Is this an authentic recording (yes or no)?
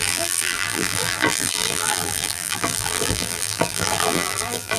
no